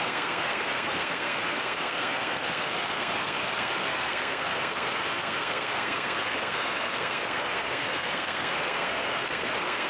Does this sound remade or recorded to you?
remade